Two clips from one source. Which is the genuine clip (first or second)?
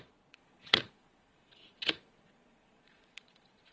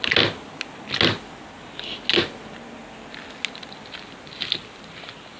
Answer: second